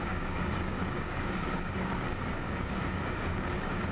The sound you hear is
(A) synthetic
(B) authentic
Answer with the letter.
A